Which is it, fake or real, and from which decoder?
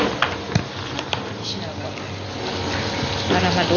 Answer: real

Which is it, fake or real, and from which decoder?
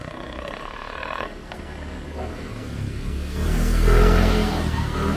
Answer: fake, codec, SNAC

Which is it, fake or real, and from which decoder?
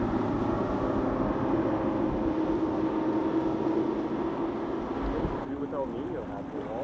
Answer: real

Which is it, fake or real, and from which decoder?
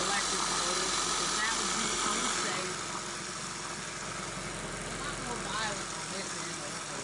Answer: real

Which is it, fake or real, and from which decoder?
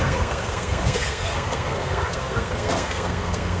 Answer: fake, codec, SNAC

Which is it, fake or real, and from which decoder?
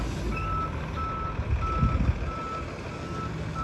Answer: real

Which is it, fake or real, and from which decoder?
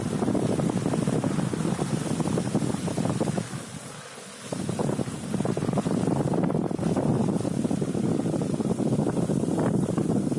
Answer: real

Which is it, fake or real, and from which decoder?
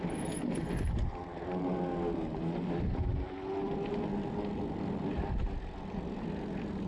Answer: real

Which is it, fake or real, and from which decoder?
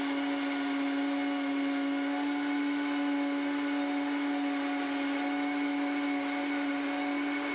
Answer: real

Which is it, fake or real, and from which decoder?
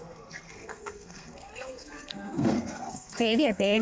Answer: fake, codec, SNAC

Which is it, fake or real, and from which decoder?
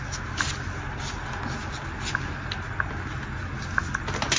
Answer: real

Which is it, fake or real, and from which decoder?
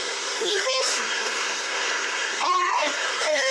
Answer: fake, codec, SNAC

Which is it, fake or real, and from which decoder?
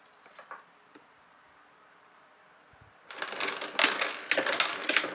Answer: real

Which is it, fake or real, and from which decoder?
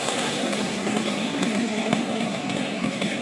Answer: fake, codec, SNAC